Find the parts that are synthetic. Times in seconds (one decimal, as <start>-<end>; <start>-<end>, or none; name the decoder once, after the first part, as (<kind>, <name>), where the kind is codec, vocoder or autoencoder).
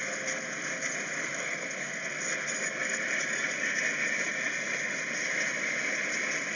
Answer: 1.2-2.2 (codec, SNAC)